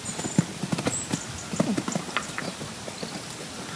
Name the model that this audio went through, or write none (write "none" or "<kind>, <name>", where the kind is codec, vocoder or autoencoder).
none